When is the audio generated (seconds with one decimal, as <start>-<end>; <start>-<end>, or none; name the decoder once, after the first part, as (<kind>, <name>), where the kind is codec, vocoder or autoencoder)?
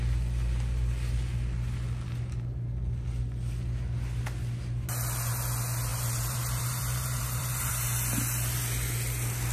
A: 5.9-7.7 (vocoder, BigVGAN v2)